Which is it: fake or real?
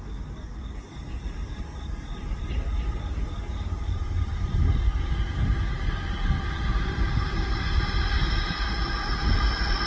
real